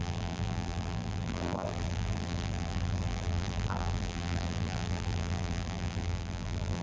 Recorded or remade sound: remade